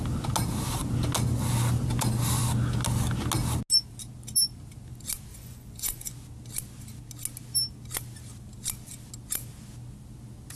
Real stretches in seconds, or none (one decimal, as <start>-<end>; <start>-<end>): 0.0-5.3; 6.1-10.6